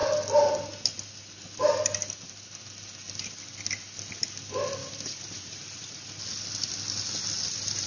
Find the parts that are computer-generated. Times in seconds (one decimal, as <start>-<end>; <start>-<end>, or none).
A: 4.8-6.2

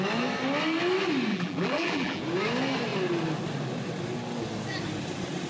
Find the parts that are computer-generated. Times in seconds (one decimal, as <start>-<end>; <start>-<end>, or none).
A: 1.3-2.2

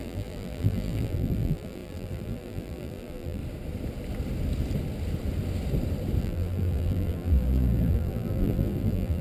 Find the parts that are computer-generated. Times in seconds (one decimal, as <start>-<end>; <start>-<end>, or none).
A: 0.0-3.4; 6.2-9.2

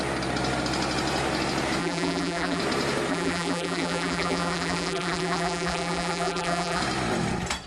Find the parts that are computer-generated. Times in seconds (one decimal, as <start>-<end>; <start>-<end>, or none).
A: 1.8-2.6; 3.1-6.8

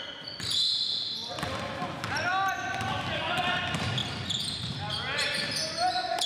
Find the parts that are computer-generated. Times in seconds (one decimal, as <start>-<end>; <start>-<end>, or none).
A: none

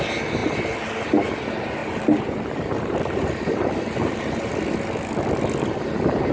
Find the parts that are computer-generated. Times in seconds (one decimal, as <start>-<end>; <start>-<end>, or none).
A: 1.8-4.5

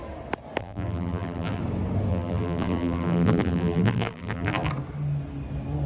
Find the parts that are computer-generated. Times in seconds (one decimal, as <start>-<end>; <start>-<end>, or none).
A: 0.6-1.6; 2.1-4.7